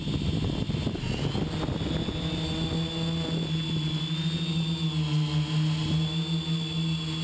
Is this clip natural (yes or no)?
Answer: yes